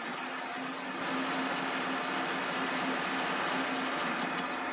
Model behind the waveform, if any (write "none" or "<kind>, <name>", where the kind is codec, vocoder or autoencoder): none